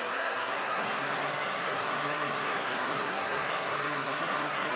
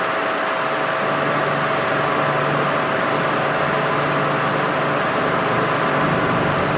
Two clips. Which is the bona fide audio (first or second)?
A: second